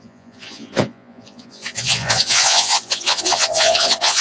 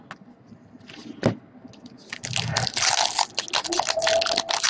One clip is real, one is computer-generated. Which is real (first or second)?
second